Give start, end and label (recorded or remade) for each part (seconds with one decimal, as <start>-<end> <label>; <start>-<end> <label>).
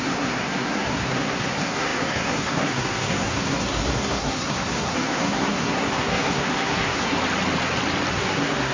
0.0-7.2 remade; 7.2-8.1 recorded; 8.1-8.7 remade